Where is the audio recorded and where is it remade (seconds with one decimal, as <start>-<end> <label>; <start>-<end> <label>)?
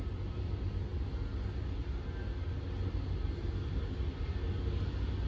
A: 0.0-5.3 recorded